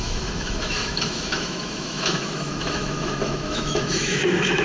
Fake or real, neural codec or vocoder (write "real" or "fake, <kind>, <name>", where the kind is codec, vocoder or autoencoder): fake, autoencoder, DAC-VAE